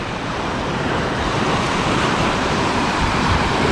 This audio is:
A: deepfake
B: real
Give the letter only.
A